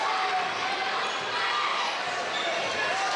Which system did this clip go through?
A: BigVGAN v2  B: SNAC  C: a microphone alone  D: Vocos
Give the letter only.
C